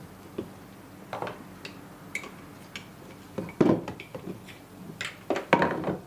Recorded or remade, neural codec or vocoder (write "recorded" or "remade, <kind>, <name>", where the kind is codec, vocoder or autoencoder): recorded